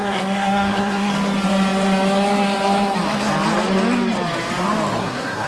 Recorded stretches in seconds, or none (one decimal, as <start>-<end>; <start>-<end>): 1.1-5.0